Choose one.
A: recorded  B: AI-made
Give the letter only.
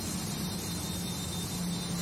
A